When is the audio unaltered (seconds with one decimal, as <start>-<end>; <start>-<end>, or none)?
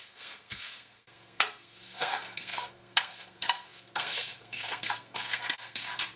none